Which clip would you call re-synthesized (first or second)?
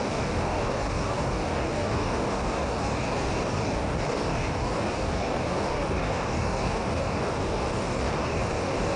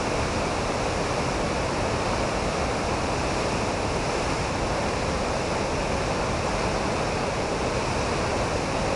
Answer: first